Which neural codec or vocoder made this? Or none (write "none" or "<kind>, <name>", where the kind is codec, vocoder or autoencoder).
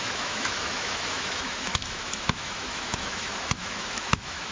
autoencoder, DAC-VAE